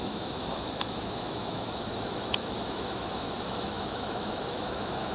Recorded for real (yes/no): no